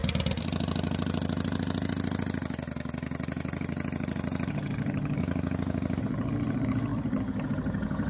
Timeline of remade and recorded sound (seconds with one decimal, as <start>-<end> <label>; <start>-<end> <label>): 0.0-4.5 recorded; 4.5-5.2 remade; 5.2-6.0 recorded; 6.0-8.1 remade